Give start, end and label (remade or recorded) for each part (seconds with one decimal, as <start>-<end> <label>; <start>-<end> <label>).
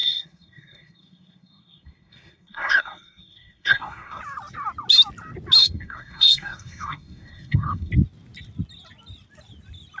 0.0-4.2 remade; 4.2-5.6 recorded; 5.6-7.9 remade; 7.9-10.0 recorded